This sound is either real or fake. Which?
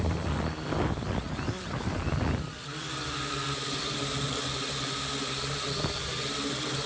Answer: real